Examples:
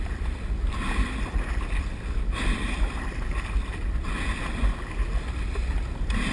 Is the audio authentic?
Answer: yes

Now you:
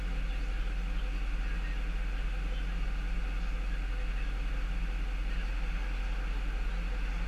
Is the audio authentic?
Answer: yes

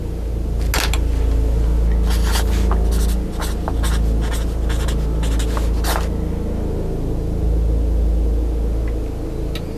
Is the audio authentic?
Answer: yes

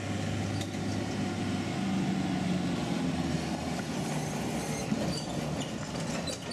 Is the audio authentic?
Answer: yes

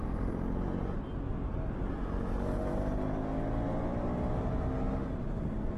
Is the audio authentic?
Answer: yes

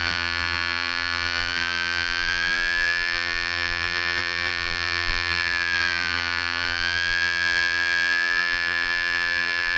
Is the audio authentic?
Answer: no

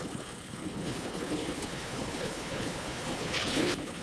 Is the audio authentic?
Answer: no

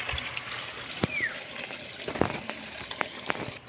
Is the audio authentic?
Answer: no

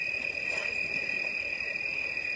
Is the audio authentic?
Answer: yes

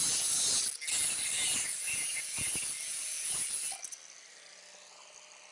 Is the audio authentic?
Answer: yes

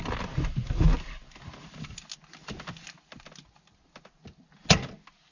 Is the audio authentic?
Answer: yes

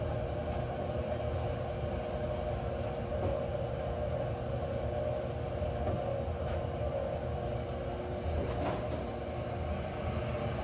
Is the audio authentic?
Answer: yes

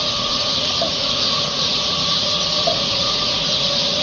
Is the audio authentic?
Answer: no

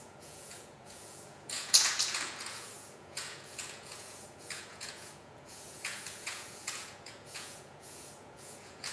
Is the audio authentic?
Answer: no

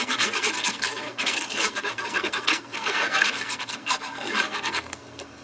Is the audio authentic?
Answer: no